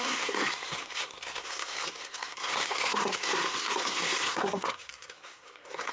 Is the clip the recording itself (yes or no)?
no